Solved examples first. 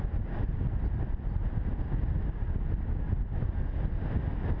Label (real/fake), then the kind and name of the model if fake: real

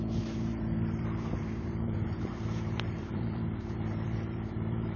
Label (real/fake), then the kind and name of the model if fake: fake, vocoder, BigVGAN v2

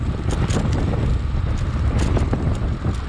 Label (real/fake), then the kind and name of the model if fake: real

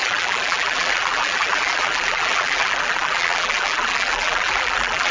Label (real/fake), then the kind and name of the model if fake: fake, vocoder, BigVGAN v2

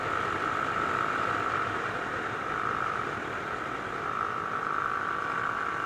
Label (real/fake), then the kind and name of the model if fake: real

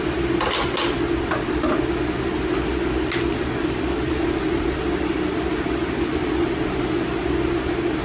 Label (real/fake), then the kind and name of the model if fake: real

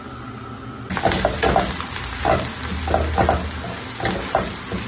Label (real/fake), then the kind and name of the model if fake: real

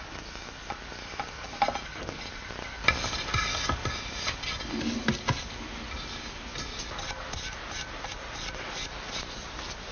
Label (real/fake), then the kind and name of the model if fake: real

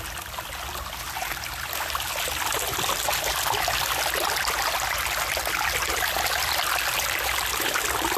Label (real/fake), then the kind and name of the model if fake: real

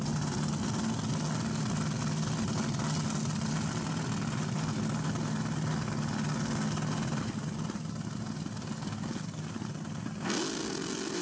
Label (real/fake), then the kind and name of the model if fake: real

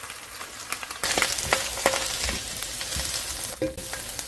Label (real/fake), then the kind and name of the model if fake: real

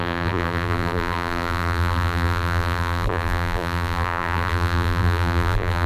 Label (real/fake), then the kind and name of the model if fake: fake, vocoder, BigVGAN v2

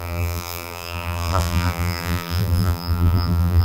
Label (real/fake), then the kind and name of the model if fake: fake, vocoder, BigVGAN v2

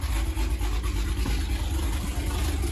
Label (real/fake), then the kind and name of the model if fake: real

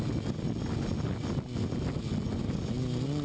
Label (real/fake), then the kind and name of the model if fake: real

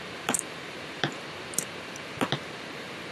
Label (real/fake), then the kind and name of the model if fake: fake, vocoder, BigVGAN v2